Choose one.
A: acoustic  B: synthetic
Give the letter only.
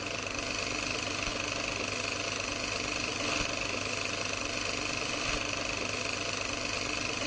A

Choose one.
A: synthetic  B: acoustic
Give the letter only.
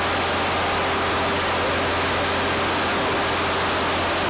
B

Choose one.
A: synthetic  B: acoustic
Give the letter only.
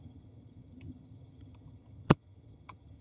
A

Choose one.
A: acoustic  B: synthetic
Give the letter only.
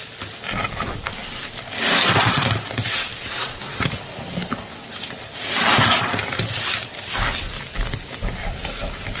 A